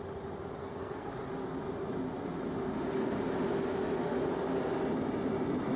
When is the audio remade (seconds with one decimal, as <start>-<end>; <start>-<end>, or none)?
0.6-1.1

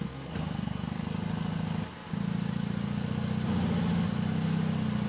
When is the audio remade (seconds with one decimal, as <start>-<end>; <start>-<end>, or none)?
0.0-1.0

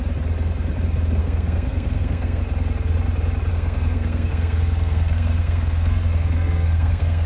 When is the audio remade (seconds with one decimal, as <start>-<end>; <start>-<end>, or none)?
1.2-2.4; 3.5-7.3

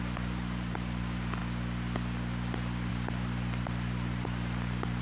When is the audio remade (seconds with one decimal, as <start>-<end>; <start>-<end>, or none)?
0.0-1.4; 2.9-5.0

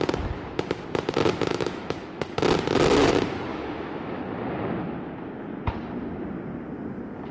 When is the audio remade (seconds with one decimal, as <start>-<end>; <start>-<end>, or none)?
1.5-2.2; 3.5-4.2